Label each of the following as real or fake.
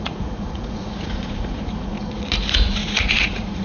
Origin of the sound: fake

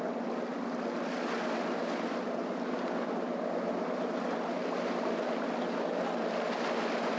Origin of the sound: real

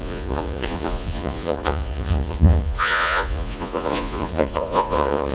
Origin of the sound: fake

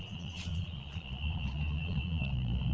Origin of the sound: fake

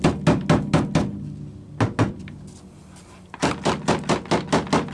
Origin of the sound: real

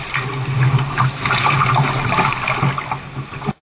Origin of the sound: real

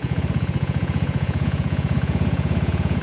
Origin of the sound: fake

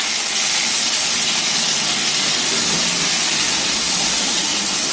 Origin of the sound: real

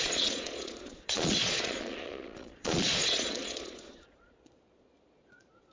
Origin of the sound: fake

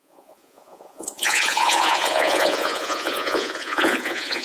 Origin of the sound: fake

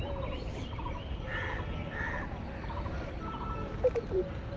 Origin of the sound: real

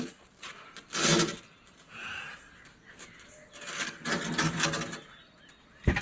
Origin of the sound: real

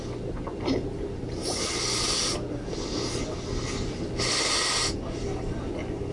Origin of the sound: real